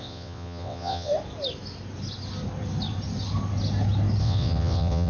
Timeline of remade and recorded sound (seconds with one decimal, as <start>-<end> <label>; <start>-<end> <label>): 0.0-1.1 remade; 1.1-4.2 recorded; 4.2-5.1 remade